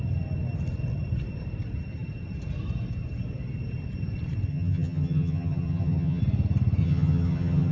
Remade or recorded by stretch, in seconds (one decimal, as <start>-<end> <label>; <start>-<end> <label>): 0.0-4.5 recorded; 4.5-6.2 remade; 6.2-6.8 recorded; 6.8-7.7 remade